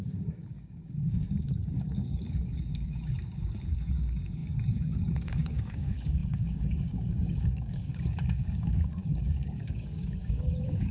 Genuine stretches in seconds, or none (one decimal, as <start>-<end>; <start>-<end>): none